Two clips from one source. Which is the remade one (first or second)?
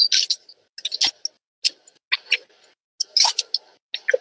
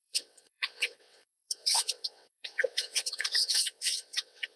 second